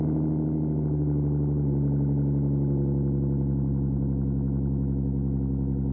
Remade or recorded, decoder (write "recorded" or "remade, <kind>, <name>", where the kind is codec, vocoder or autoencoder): recorded